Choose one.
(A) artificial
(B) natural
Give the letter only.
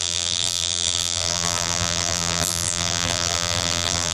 A